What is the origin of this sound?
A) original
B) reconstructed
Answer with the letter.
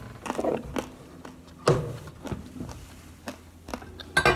A